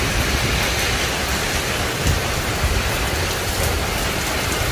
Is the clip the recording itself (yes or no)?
yes